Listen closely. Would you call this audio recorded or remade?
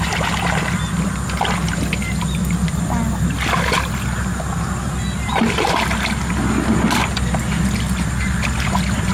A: recorded